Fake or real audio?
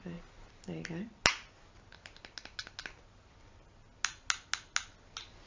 real